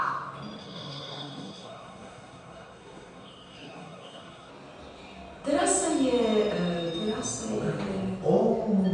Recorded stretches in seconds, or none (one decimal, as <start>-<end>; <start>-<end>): 0.0-0.6; 4.5-8.9